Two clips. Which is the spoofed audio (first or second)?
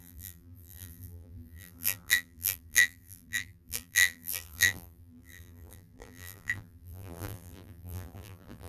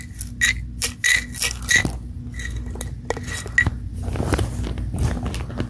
first